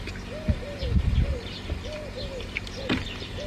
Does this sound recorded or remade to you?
remade